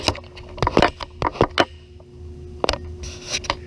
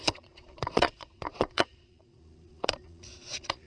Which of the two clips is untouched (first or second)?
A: first